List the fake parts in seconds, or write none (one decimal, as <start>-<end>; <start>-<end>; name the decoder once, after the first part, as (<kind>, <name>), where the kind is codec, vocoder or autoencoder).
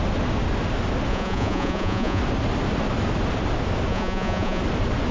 1.1-2.2 (vocoder, Vocos); 3.9-4.6